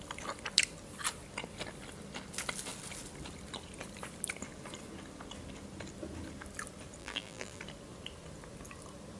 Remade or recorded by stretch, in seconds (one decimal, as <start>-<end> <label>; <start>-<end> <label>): 0.0-7.0 recorded; 7.0-7.6 remade; 7.6-9.2 recorded